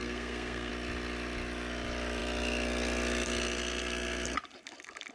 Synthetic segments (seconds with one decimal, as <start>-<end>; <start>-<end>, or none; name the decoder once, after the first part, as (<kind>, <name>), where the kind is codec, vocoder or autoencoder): 0.0-0.7 (codec, SNAC)